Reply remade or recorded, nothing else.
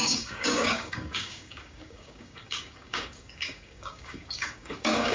remade